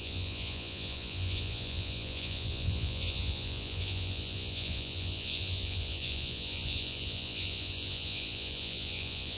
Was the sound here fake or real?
fake